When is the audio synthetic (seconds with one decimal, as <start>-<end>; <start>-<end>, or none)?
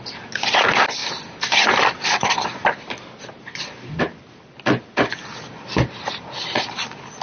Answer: none